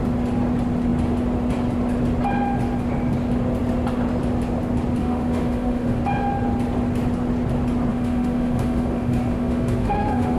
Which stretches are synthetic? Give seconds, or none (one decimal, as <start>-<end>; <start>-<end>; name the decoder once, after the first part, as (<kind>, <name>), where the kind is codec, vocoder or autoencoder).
5.0-6.0 (autoencoder, DAC-VAE); 7.9-10.4